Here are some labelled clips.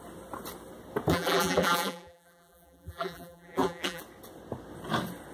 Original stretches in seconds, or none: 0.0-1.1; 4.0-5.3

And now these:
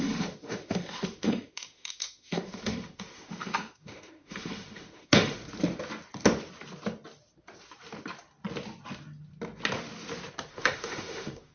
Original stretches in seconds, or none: 5.4-10.5

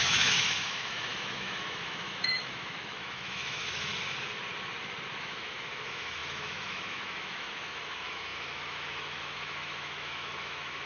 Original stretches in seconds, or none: 3.9-5.2

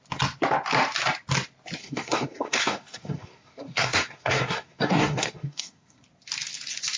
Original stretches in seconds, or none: 0.0-1.8; 6.0-7.0

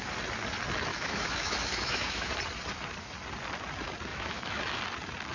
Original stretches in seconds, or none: 0.0-0.9; 2.3-4.1; 4.8-5.3

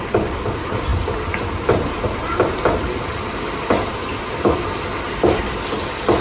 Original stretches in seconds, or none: 0.0-6.2

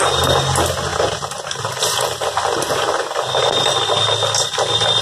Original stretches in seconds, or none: 0.0-5.0

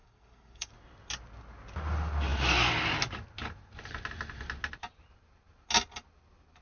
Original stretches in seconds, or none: 0.7-6.6